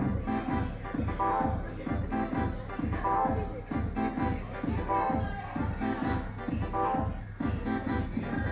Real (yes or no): yes